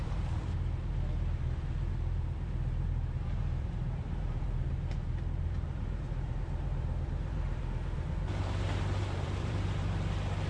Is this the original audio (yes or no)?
no